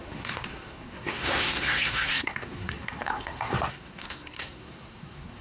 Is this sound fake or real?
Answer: fake